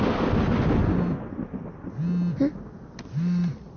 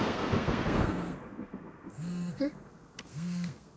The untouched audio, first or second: first